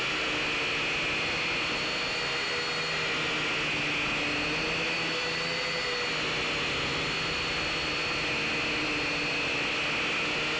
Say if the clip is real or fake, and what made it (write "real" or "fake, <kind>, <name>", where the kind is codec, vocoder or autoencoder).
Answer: real